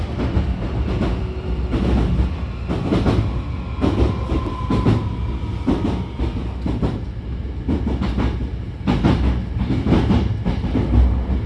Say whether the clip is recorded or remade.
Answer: recorded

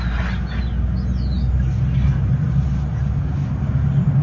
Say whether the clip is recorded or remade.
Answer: recorded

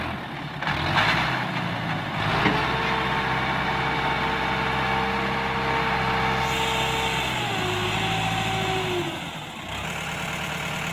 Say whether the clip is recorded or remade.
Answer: recorded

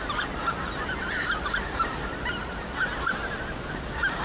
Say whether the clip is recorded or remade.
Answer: recorded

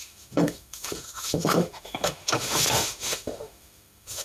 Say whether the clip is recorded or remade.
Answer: remade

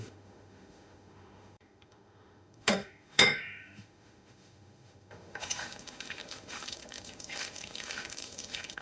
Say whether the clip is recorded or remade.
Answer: remade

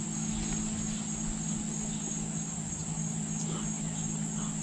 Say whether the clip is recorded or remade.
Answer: recorded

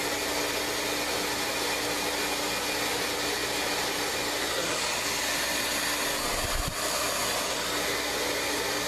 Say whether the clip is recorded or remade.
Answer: recorded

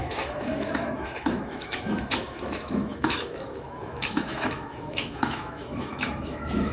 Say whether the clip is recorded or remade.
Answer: remade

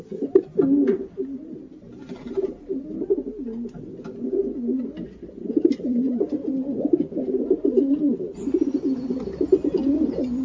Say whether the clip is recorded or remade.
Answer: recorded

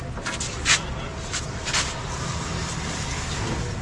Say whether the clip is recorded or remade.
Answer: recorded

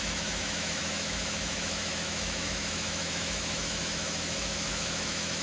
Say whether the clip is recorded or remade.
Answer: remade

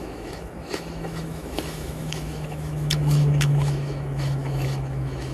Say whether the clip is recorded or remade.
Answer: remade